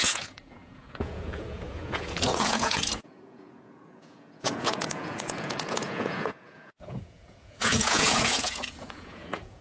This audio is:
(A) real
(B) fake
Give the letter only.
B